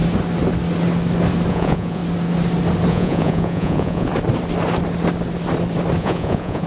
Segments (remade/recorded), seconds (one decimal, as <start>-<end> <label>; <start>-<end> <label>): 0.0-1.5 recorded; 1.5-2.0 remade; 2.0-2.9 recorded; 2.9-4.1 remade; 4.1-6.0 recorded; 6.0-6.7 remade